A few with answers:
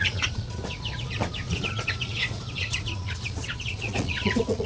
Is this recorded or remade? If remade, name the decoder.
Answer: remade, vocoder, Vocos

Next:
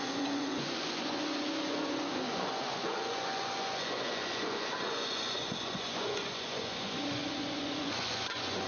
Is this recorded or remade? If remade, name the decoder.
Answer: remade, vocoder, Vocos